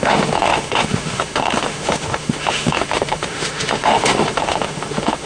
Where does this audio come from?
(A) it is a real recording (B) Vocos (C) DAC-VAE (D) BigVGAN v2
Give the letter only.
C